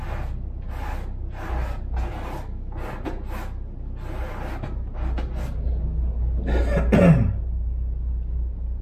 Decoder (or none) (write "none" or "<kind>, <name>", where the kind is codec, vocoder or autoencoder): none